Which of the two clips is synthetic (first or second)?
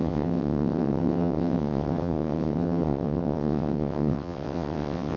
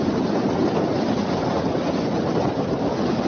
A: first